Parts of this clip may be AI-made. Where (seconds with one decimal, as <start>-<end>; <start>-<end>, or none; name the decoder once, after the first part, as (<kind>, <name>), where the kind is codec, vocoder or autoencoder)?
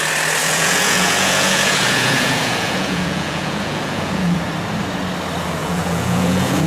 0.4-4.4 (vocoder, Vocos); 5.6-6.7